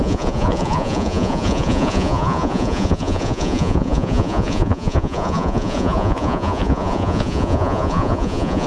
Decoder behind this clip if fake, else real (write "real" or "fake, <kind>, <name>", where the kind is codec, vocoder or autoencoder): fake, vocoder, Vocos